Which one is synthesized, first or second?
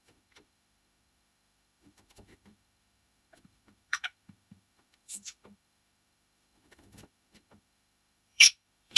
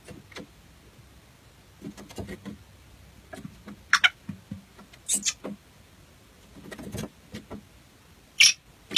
first